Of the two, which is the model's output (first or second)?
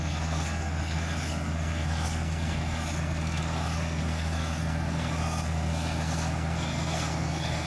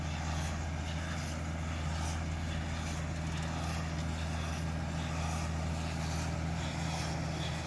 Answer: first